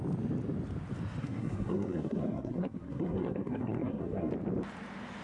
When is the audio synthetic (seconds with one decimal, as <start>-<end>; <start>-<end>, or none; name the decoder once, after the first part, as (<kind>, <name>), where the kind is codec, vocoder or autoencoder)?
1.2-4.3 (codec, SNAC)